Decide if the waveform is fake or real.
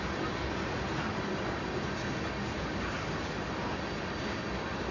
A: real